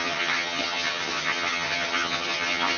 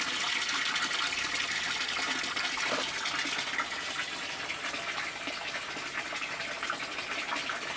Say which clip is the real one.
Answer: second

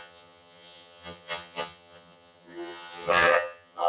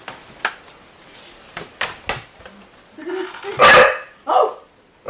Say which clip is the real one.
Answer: second